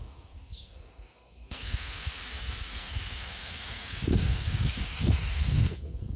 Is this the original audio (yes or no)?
no